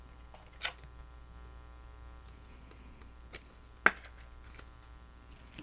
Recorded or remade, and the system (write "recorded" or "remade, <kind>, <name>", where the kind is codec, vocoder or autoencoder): recorded